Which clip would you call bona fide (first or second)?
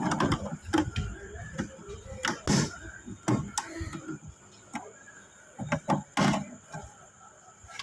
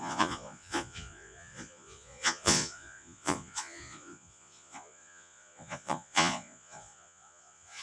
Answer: first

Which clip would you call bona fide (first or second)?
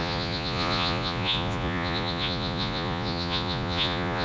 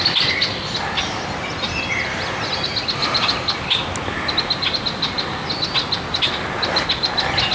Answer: second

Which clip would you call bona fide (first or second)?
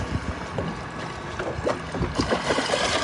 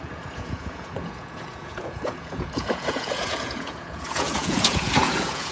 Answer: first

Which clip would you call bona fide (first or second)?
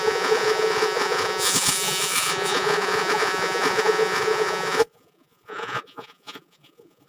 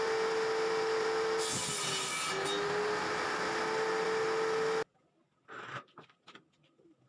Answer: second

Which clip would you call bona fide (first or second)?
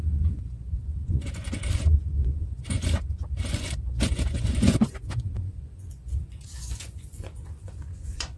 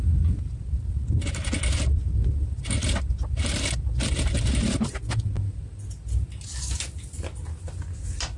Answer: second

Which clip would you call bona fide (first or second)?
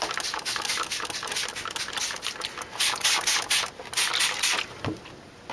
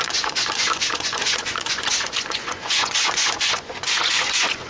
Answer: first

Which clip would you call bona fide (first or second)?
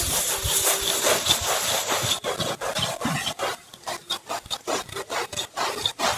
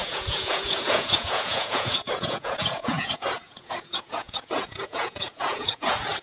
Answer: first